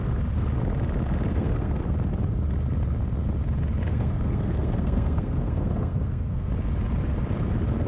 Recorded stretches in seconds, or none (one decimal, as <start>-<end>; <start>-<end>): 0.0-1.3; 1.8-3.9; 6.5-7.9